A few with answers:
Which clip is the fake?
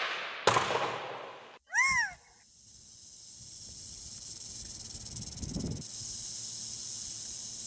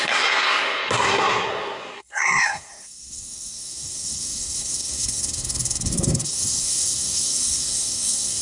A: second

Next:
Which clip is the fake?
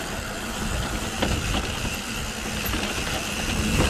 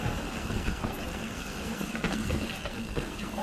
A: second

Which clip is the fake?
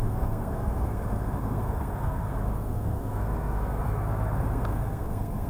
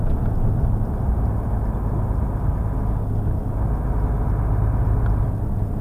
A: first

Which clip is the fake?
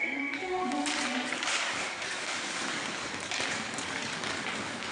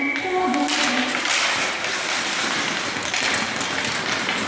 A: first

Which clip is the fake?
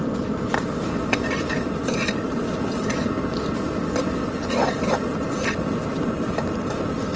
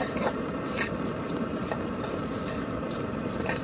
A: second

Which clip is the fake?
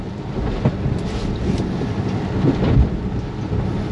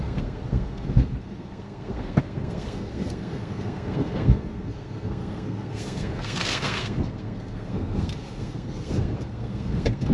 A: second